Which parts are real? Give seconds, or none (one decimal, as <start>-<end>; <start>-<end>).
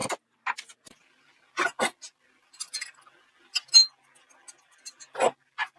0.0-5.8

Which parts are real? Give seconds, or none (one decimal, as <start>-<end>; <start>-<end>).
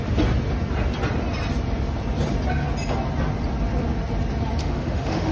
0.0-4.6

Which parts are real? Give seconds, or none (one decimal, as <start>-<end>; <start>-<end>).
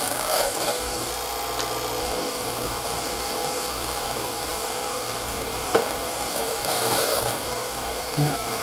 1.1-2.0